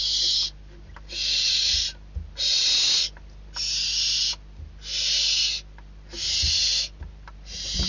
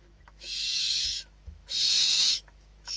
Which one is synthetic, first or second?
second